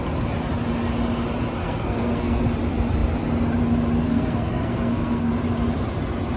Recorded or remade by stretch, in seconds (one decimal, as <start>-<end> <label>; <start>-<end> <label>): 0.0-1.6 recorded; 1.6-2.4 remade; 2.4-4.0 recorded; 4.0-5.3 remade; 5.3-6.4 recorded